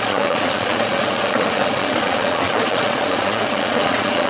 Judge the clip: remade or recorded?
remade